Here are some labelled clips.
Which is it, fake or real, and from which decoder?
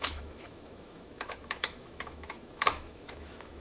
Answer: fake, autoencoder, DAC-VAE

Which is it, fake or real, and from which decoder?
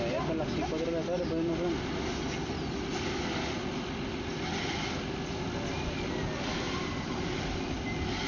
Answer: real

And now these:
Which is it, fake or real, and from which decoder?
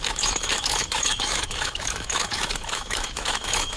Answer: fake, autoencoder, DAC-VAE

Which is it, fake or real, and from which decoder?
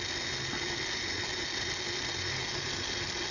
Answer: real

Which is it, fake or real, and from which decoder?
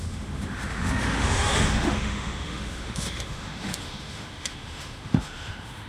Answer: fake, autoencoder, DAC-VAE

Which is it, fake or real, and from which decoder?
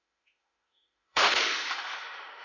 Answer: fake, autoencoder, DAC-VAE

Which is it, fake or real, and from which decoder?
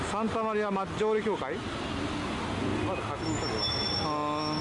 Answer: real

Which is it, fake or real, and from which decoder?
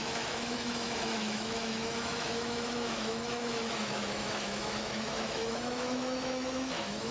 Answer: fake, autoencoder, DAC-VAE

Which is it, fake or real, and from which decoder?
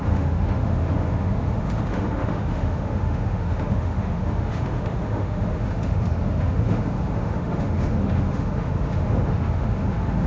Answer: fake, autoencoder, DAC-VAE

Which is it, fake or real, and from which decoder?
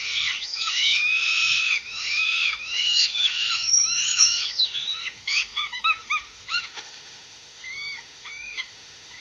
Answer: fake, autoencoder, DAC-VAE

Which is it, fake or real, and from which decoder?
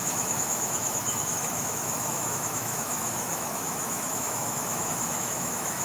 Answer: fake, autoencoder, DAC-VAE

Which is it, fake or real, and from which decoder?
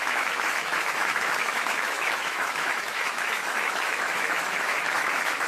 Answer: fake, autoencoder, DAC-VAE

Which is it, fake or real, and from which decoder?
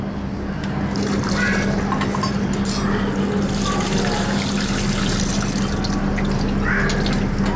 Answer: real